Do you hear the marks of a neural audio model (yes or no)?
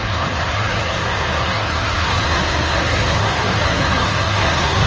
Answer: yes